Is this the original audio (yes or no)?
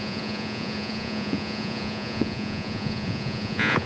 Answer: no